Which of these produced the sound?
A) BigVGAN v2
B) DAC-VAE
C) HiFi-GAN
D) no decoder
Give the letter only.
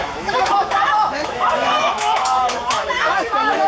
B